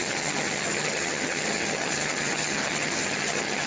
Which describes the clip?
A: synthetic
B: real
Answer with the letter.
A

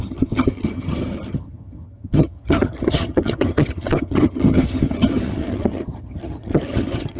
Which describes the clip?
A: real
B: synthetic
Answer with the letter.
B